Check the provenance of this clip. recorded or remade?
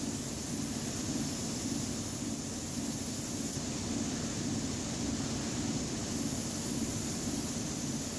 recorded